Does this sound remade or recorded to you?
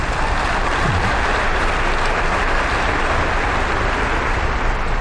recorded